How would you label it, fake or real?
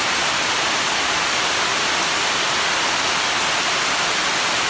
real